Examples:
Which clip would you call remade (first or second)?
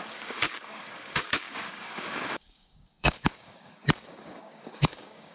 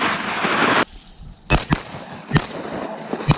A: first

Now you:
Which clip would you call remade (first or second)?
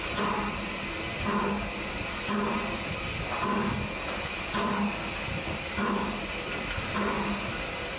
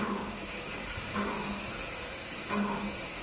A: second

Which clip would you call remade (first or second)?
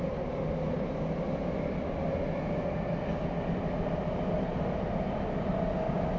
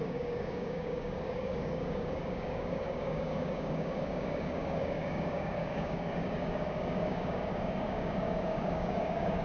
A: second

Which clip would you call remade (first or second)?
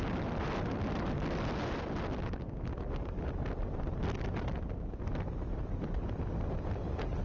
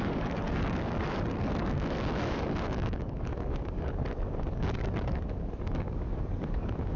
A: second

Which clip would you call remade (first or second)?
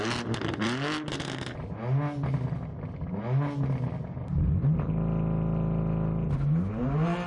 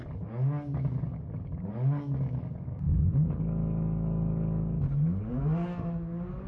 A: second